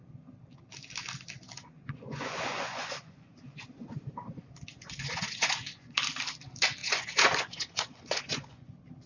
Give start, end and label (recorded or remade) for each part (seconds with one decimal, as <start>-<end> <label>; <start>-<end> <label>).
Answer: 0.0-1.6 recorded; 1.6-3.6 remade; 3.6-4.7 recorded; 4.7-6.0 remade; 6.0-6.8 recorded; 6.8-8.7 remade; 8.7-9.1 recorded